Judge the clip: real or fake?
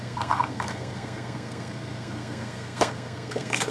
fake